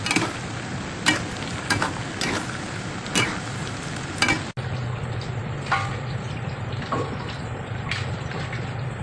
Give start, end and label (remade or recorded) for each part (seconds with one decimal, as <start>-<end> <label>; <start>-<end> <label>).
0.0-6.0 recorded; 6.0-8.4 remade; 8.4-9.0 recorded